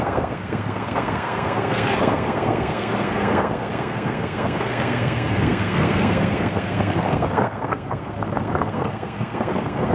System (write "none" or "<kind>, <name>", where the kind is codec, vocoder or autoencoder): codec, SNAC